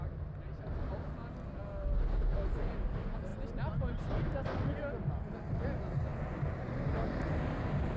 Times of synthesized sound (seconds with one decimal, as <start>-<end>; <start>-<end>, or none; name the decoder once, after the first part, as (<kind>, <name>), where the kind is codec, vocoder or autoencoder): none